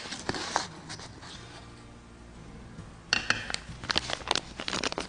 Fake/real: real